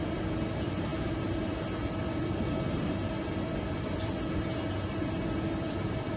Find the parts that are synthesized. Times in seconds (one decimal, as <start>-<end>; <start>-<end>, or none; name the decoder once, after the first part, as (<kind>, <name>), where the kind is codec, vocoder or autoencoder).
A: 0.0-0.9 (vocoder, BigVGAN v2); 3.0-6.2